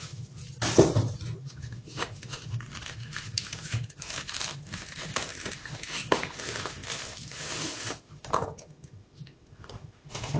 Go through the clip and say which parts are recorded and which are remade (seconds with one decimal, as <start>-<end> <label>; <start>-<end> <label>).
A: 0.0-0.4 remade; 0.4-1.4 recorded; 1.4-10.4 remade